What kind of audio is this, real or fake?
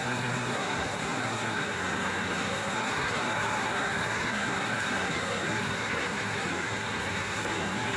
fake